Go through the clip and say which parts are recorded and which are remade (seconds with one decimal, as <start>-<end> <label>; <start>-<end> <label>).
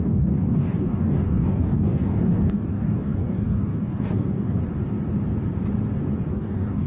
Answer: 0.0-4.6 remade; 4.6-6.3 recorded; 6.3-6.9 remade